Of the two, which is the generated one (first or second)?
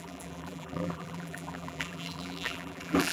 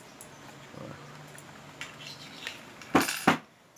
first